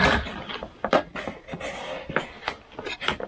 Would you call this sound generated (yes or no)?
no